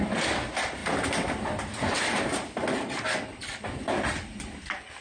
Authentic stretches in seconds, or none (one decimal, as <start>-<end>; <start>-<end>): 0.0-5.0